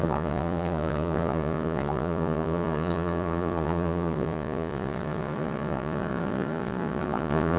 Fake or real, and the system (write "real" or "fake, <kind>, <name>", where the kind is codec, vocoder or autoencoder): fake, vocoder, Vocos